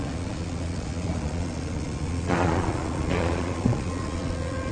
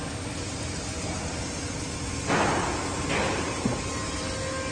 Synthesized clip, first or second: first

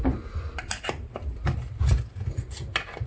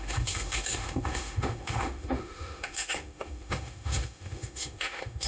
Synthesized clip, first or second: second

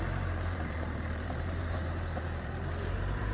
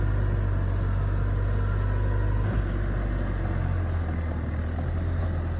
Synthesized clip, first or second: first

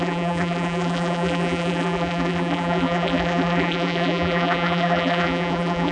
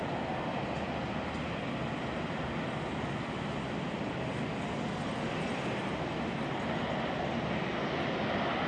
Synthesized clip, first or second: first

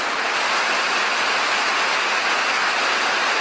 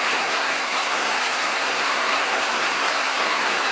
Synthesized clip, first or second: second